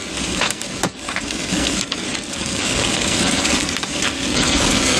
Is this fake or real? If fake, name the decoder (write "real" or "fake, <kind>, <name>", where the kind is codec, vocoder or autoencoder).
fake, codec, SNAC